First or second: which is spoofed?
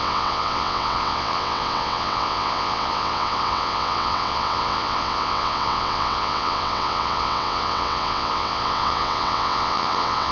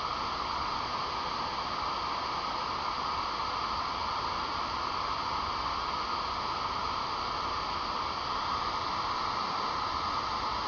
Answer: first